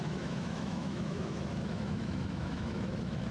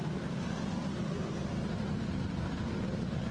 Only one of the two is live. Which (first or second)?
second